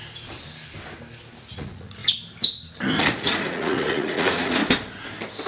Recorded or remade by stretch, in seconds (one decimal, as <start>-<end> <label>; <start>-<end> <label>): 0.0-1.4 recorded; 1.4-2.0 remade; 2.0-3.0 recorded; 3.0-4.6 remade; 4.6-5.5 recorded